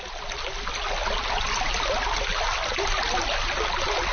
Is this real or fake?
real